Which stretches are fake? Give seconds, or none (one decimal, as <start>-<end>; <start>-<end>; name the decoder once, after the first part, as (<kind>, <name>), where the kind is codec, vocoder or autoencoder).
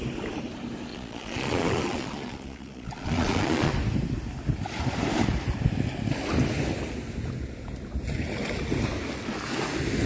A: 0.9-3.7 (vocoder, Vocos)